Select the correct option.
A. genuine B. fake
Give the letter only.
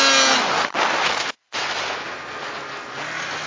A